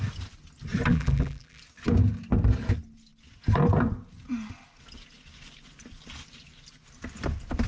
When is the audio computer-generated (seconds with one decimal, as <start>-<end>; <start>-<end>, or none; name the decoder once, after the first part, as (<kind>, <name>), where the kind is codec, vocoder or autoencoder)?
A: 0.9-1.6 (vocoder, BigVGAN v2)